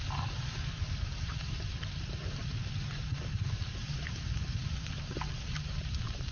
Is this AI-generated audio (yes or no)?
yes